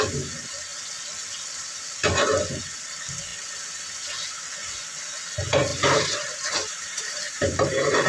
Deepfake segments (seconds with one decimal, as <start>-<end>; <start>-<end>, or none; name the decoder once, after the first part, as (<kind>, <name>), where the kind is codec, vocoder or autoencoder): 5.7-8.1 (vocoder, BigVGAN v2)